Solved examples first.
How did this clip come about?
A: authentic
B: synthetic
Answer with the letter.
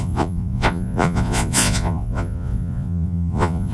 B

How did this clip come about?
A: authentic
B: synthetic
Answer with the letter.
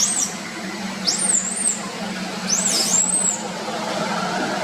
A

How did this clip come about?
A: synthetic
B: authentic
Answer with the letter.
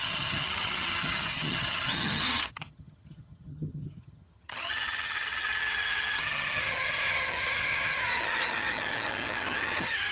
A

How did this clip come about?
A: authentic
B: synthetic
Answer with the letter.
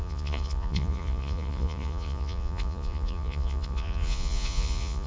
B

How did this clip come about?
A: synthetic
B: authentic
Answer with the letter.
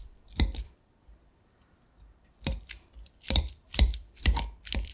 A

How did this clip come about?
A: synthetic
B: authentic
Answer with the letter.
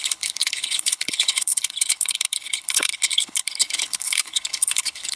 A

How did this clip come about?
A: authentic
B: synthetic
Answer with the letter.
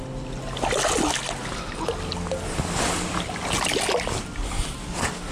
A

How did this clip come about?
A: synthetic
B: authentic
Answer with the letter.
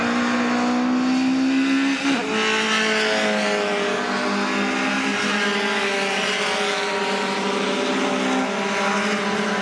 B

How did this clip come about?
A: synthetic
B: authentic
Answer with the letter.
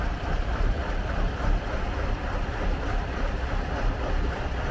A